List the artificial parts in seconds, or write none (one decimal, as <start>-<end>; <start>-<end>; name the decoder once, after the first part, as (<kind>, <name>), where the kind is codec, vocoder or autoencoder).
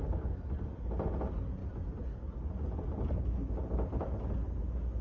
none